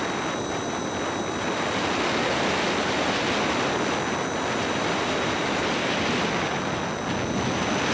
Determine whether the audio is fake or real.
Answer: real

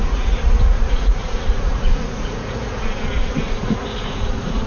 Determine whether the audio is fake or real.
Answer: fake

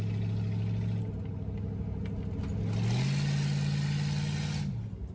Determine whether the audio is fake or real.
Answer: real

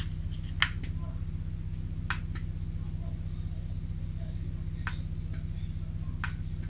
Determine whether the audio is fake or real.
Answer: real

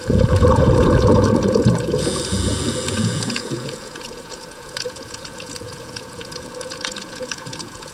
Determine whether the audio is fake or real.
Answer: fake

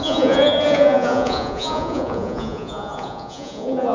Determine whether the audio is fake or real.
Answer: fake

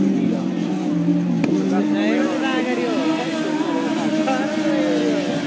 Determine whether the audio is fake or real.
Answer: real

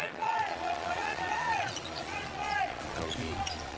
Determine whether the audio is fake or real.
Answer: fake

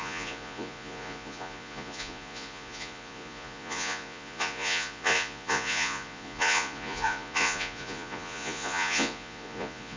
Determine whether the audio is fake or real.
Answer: fake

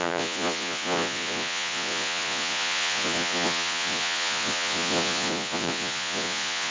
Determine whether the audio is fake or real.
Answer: fake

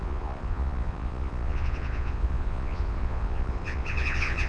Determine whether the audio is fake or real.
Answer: fake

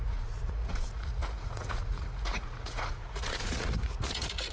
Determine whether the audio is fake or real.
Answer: fake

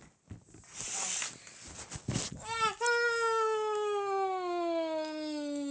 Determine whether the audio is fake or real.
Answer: real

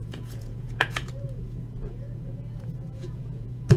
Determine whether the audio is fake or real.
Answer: fake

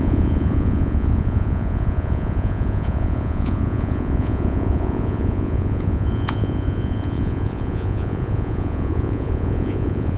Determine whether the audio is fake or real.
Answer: fake